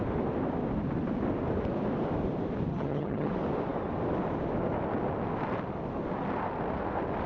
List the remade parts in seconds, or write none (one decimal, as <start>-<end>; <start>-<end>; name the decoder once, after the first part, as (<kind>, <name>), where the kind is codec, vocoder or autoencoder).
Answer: 2.7-3.3 (vocoder, HiFi-GAN)